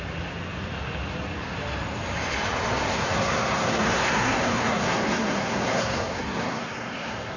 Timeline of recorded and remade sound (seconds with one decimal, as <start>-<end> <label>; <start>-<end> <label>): 0.0-2.9 recorded; 2.9-7.4 remade

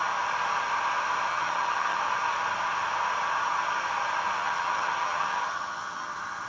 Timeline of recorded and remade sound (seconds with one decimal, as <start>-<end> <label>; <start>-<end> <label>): 0.0-1.3 recorded; 1.3-2.0 remade; 2.0-4.4 recorded; 4.4-6.1 remade; 6.1-6.5 recorded

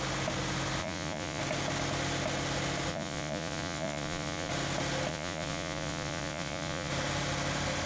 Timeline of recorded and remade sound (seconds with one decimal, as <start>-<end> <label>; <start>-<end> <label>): 0.0-0.8 recorded; 0.8-1.4 remade; 1.4-2.9 recorded; 2.9-4.5 remade; 4.5-5.1 recorded; 5.1-6.9 remade; 6.9-7.9 recorded

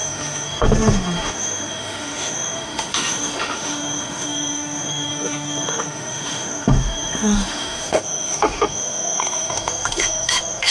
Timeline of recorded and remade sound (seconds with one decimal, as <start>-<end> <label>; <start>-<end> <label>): 0.0-10.7 remade

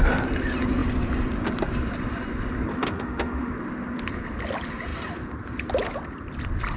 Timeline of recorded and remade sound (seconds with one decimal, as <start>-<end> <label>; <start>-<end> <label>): 0.0-2.7 recorded; 2.7-3.5 remade; 3.5-6.8 recorded

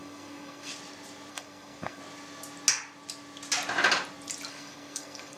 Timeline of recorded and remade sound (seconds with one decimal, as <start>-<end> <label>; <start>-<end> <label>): 0.0-0.7 remade; 0.7-1.3 recorded; 1.3-2.0 remade; 2.0-4.5 recorded; 4.5-5.4 remade

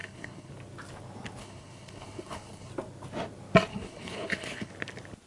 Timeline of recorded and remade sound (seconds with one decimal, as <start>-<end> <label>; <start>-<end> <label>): 0.0-0.5 remade; 0.5-1.4 recorded; 1.4-2.7 remade; 2.7-3.7 recorded; 3.7-4.7 remade; 4.7-5.3 recorded

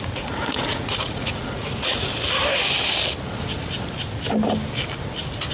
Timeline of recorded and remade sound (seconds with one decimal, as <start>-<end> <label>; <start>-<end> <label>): 0.0-2.1 remade; 2.1-5.5 recorded